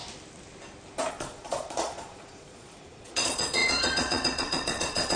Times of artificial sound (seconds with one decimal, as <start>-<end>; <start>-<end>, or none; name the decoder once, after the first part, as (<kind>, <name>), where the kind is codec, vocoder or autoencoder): 1.1-5.2 (vocoder, Vocos)